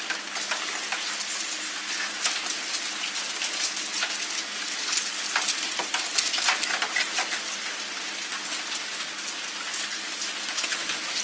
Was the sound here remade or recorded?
recorded